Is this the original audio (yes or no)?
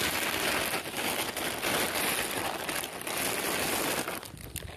yes